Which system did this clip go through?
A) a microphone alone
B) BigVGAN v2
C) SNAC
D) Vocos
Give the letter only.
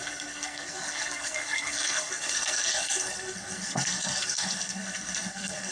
C